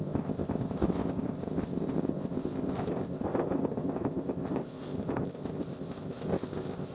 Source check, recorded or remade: remade